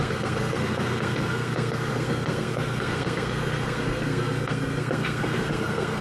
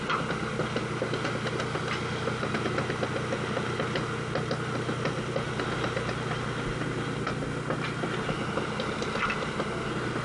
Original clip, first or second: second